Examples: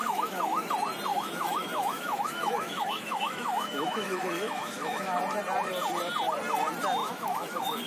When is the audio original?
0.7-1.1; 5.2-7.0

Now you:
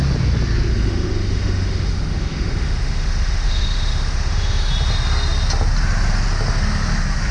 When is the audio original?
0.0-0.7; 4.7-7.3

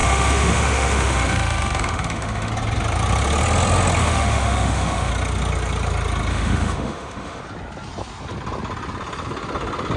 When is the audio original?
2.5-4.0; 5.1-6.3; 7.4-10.0

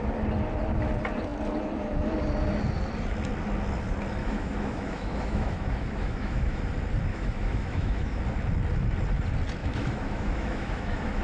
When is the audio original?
0.0-4.2; 6.6-7.1; 8.2-9.6

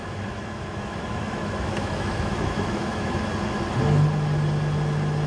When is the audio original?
3.2-5.3

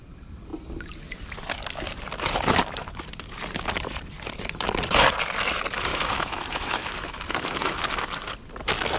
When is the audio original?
0.0-5.9; 7.8-9.0

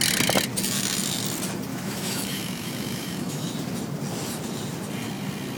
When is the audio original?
0.0-1.7; 3.5-5.6

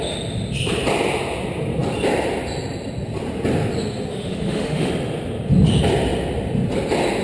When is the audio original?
0.0-4.1; 4.9-7.2